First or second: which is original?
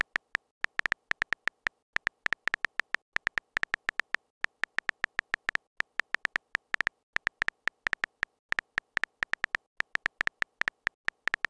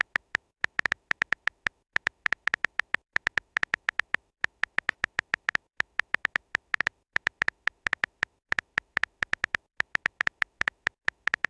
first